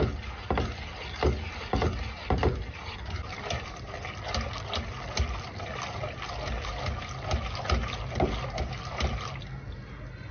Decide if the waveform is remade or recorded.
recorded